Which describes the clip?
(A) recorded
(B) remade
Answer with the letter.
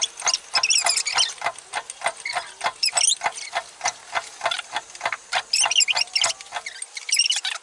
A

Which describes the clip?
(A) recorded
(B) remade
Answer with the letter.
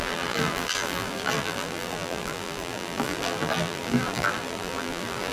B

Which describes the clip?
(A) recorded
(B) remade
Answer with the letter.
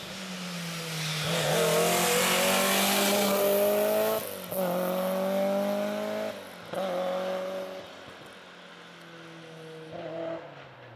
A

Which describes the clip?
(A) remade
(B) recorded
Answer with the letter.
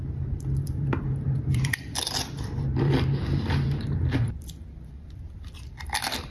A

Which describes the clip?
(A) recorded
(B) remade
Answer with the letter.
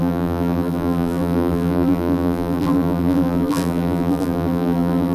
B